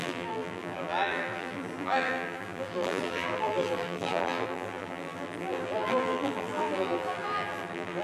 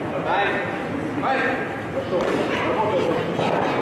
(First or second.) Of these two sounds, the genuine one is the second